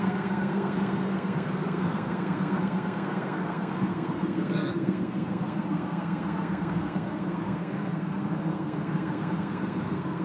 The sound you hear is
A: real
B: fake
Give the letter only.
B